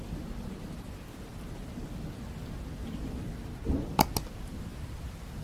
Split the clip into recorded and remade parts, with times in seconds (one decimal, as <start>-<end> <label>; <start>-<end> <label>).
0.0-5.4 recorded